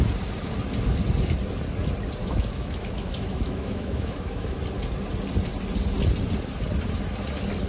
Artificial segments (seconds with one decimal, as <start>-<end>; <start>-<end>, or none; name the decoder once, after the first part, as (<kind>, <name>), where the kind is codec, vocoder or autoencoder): 2.2-4.6 (autoencoder, DAC-VAE)